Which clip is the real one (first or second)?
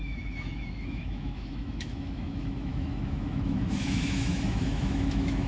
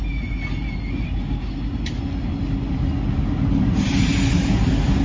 second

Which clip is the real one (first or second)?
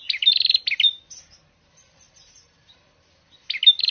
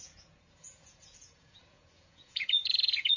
first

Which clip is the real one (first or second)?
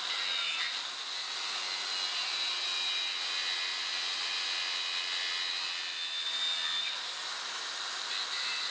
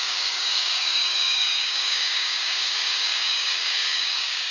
first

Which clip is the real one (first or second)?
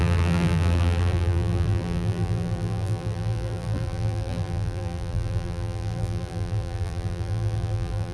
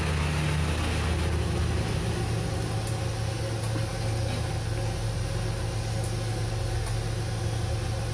second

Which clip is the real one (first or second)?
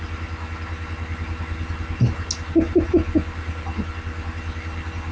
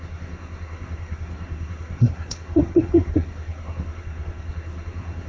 first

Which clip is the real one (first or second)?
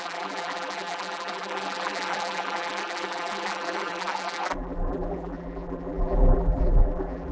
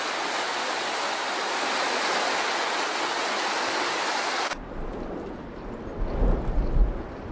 second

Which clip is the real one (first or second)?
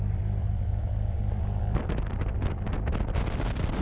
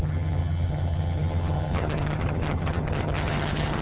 first